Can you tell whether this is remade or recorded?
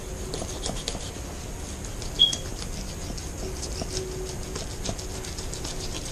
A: recorded